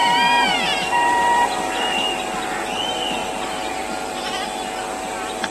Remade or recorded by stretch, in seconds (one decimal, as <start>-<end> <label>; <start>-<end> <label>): 0.0-2.1 remade; 2.1-3.2 recorded; 3.2-4.1 remade; 4.1-5.5 recorded